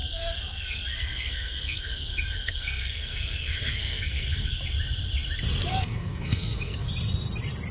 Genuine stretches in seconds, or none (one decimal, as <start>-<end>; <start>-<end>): 4.6-5.7; 6.9-7.7